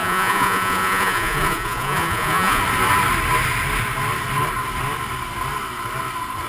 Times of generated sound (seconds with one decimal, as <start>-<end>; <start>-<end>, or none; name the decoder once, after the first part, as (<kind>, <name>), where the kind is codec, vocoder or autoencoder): 0.0-2.6 (vocoder, Vocos)